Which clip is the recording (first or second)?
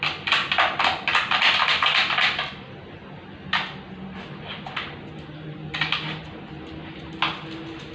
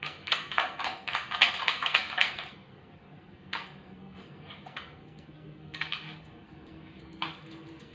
first